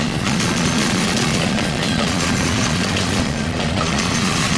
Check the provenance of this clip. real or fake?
fake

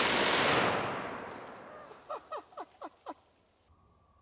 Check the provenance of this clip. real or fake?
real